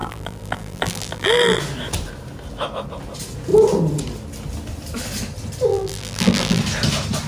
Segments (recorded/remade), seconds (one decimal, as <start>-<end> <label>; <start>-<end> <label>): 0.0-1.6 remade; 1.6-5.7 recorded; 5.7-6.6 remade; 6.6-7.3 recorded